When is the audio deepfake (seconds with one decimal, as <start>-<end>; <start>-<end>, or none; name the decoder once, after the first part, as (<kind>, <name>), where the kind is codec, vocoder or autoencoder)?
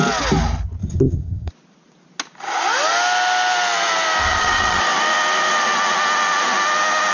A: 0.8-1.5 (vocoder, HiFi-GAN); 4.2-4.8